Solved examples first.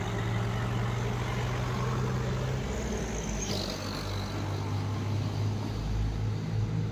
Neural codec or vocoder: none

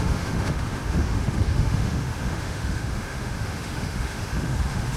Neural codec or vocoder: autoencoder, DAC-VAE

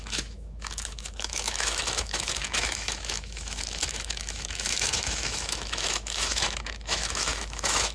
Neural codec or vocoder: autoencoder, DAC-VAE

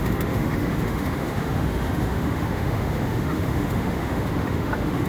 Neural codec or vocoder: autoencoder, DAC-VAE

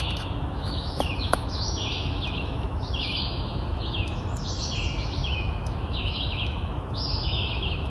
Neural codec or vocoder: autoencoder, DAC-VAE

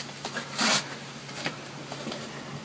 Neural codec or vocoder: none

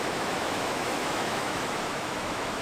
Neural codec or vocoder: autoencoder, DAC-VAE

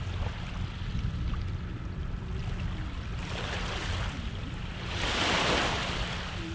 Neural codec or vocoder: none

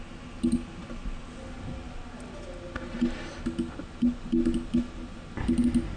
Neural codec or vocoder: none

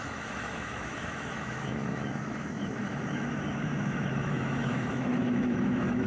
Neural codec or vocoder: autoencoder, DAC-VAE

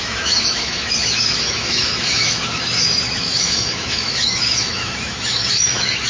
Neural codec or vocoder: autoencoder, DAC-VAE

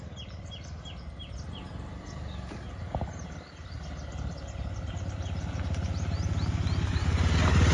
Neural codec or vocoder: none